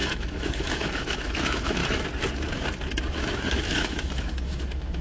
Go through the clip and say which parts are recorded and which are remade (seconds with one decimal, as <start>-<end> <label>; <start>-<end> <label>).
0.0-1.8 remade; 1.8-3.1 recorded; 3.1-5.0 remade